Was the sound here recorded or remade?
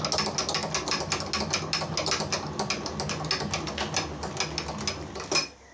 recorded